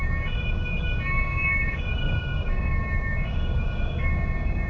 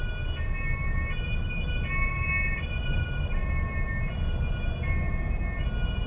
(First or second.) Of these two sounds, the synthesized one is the first